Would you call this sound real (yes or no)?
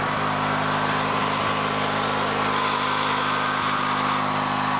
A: yes